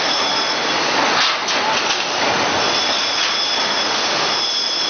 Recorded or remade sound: recorded